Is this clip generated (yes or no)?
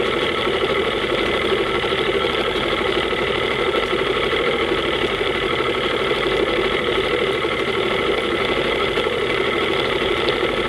no